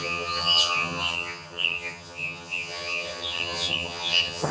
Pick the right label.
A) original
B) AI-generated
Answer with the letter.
B